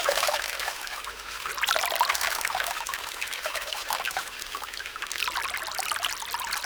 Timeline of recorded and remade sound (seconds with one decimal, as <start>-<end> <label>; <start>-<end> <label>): 0.0-1.5 remade; 1.5-2.1 recorded; 2.1-5.2 remade; 5.2-6.7 recorded